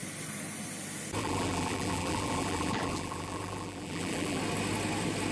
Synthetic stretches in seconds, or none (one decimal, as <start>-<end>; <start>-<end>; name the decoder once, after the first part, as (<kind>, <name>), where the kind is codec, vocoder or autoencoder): 1.2-4.4 (vocoder, BigVGAN v2)